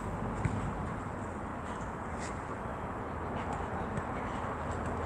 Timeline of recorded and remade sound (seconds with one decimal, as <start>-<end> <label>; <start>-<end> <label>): 0.0-5.1 recorded